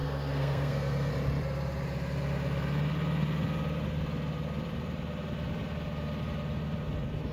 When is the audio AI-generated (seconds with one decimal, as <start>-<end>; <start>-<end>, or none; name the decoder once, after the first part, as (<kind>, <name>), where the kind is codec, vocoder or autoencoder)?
0.0-1.1 (codec, SNAC)